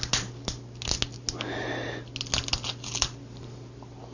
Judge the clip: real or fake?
real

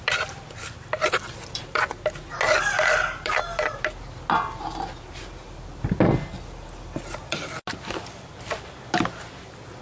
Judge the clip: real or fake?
real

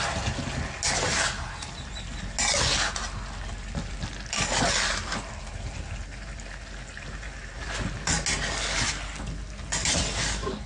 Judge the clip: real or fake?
real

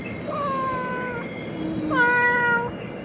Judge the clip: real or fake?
real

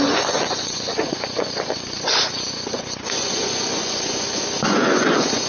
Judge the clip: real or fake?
fake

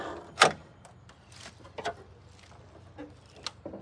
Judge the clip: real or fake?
real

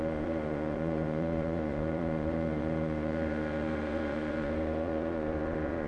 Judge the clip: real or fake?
fake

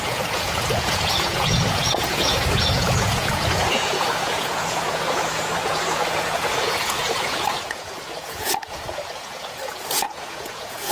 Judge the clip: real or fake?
fake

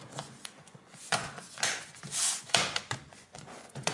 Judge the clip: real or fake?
fake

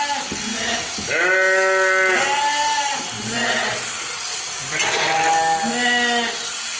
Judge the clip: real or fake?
real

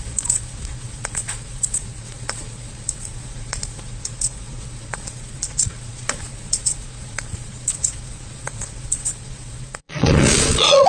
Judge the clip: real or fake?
fake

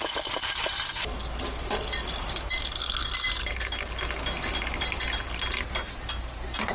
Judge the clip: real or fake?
real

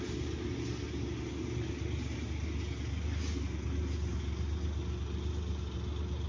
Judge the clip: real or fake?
real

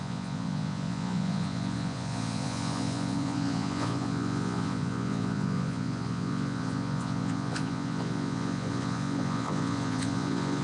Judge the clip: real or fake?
fake